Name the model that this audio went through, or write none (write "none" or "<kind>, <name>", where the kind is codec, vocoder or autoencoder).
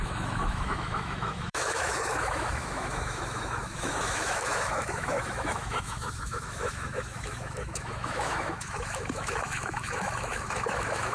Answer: autoencoder, DAC-VAE